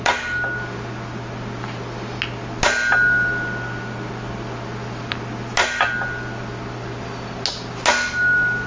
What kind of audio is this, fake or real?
real